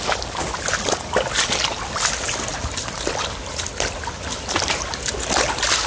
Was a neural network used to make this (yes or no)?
no